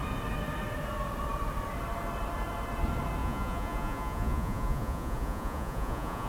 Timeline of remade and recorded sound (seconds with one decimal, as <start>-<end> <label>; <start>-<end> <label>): 0.0-3.2 recorded; 3.2-6.3 remade